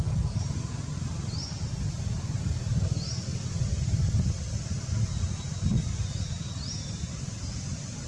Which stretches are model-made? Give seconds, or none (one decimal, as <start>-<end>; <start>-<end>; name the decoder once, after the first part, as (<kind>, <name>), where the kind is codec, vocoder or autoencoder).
none